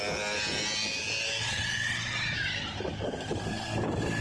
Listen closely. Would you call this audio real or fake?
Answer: real